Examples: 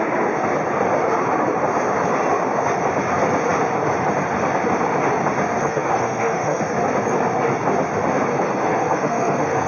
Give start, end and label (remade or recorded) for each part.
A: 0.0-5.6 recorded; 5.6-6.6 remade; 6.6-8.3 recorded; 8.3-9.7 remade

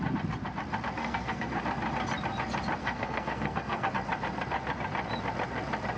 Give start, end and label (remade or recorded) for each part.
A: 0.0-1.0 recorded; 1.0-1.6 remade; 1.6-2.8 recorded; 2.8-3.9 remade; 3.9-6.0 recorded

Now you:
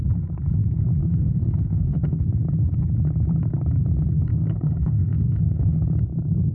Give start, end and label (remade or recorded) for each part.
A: 0.0-1.0 recorded; 1.0-2.2 remade; 2.2-4.3 recorded; 4.3-5.8 remade; 5.8-6.5 recorded

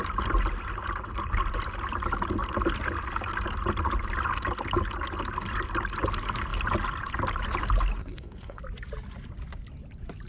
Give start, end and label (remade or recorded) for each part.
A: 0.0-8.0 recorded; 8.0-8.6 remade; 8.6-10.3 recorded

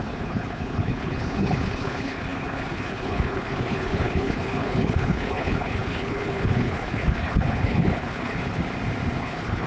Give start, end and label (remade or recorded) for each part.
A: 0.0-8.6 remade; 8.6-9.2 recorded; 9.2-9.7 remade

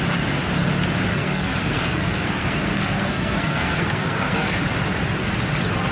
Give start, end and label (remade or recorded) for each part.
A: 0.0-1.1 recorded; 1.1-4.6 remade; 4.6-5.9 recorded

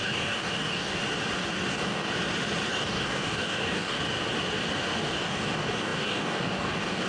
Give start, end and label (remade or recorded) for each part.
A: 0.0-1.0 remade; 1.0-1.7 recorded; 1.7-2.1 remade; 2.1-2.7 recorded; 2.7-4.0 remade; 4.0-5.0 recorded; 5.0-7.1 remade